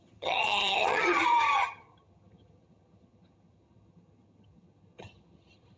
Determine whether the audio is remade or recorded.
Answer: remade